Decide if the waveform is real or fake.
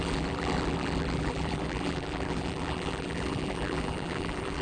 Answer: fake